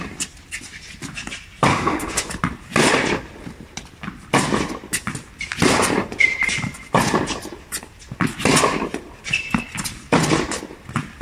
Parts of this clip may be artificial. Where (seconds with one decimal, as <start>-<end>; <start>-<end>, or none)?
1.7-2.3